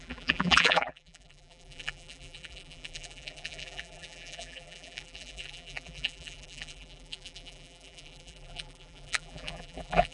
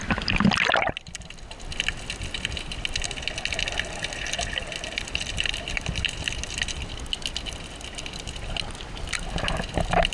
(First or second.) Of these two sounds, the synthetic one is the first